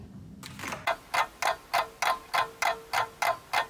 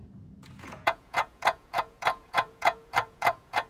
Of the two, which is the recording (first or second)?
first